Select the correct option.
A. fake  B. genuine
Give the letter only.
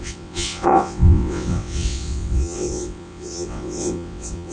A